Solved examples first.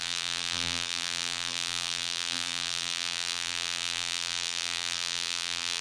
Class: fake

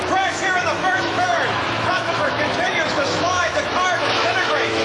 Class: fake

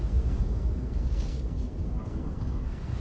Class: fake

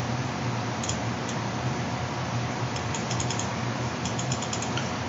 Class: fake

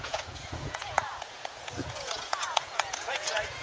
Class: fake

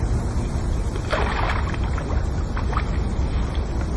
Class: real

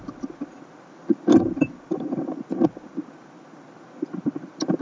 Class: real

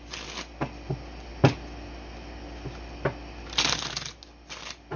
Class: real